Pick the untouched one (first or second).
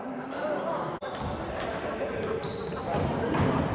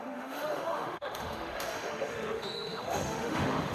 first